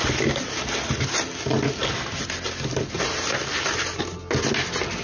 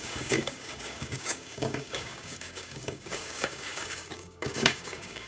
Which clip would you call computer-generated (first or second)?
second